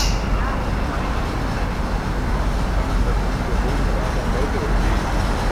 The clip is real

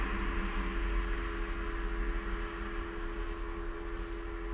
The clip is real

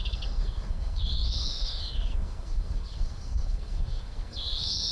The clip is fake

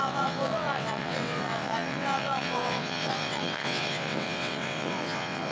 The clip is fake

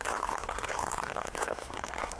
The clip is fake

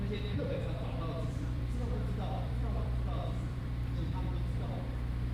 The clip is fake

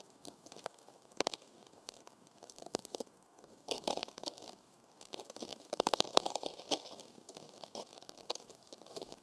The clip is fake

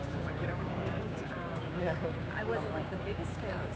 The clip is fake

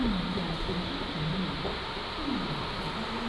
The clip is real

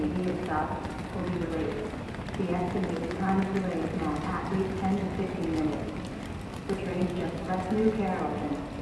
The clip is real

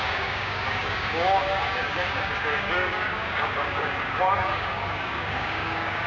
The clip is fake